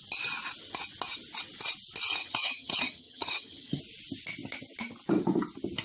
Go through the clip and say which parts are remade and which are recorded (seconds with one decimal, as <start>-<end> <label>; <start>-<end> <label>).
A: 0.0-2.2 recorded; 2.2-3.8 remade; 3.8-5.8 recorded